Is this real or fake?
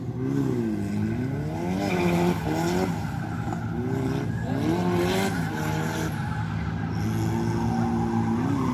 real